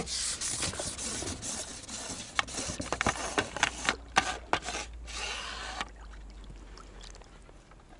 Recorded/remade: recorded